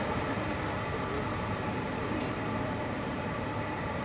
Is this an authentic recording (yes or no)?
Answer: no